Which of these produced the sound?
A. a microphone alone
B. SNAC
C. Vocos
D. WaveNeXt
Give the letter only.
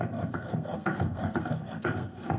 B